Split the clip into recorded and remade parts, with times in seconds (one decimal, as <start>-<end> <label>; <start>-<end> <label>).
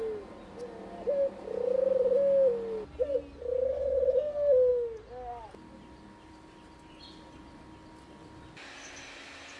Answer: 0.0-9.6 recorded